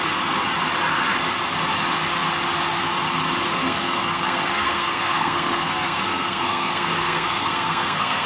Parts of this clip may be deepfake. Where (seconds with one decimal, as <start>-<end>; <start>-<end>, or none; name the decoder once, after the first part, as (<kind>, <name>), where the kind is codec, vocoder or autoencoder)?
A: 3.5-8.3 (codec, SNAC)